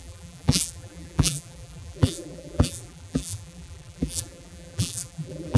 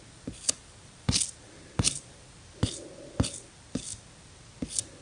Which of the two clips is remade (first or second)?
first